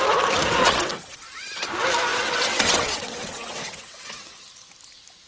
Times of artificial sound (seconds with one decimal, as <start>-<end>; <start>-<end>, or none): 0.6-1.5; 2.1-4.3